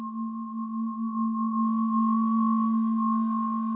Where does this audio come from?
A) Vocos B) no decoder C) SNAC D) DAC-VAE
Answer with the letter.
B